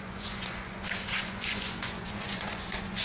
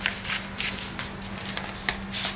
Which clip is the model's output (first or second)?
first